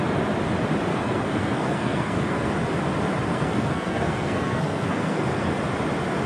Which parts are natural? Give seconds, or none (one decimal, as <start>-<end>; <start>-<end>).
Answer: 0.0-0.9; 2.5-3.3; 5.5-6.3